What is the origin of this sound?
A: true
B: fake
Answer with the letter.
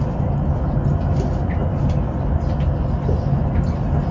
A